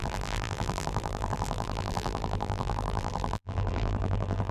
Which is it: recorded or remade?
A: remade